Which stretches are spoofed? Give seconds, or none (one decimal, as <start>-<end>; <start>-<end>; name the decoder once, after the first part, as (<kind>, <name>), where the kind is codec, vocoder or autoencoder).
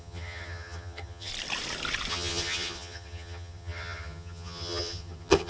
0.0-1.3 (vocoder, HiFi-GAN); 2.1-5.5